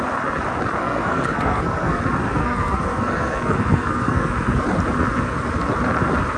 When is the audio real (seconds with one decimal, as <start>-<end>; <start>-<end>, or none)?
0.0-0.8; 2.0-2.4; 4.3-6.4

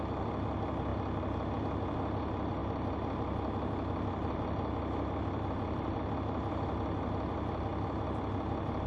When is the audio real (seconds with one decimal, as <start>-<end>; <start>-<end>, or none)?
0.0-8.9

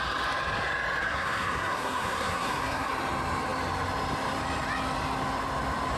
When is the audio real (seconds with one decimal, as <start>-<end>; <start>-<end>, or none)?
0.0-1.0; 2.9-6.0

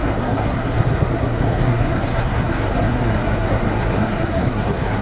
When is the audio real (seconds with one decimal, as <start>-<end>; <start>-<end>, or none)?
none

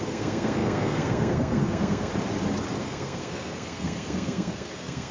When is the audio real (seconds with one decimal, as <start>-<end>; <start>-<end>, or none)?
2.1-2.8

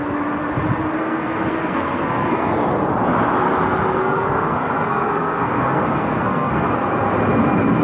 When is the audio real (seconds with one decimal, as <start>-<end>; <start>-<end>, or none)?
0.0-1.0; 2.5-3.9; 6.7-7.8

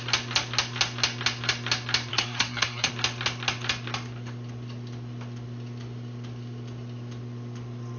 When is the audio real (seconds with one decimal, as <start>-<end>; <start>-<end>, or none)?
0.0-2.1; 2.9-8.0

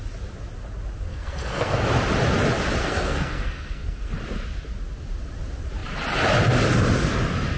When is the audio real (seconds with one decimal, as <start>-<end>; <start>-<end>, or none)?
0.0-1.1; 1.8-2.8; 4.1-7.6